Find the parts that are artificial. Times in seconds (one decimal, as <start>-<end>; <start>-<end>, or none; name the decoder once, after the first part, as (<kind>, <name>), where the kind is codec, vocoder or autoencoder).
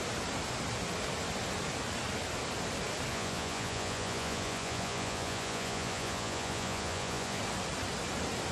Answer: 3.1-7.4 (vocoder, Vocos)